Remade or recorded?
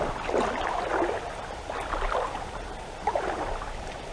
recorded